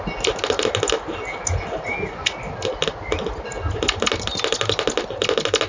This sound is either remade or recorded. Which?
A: recorded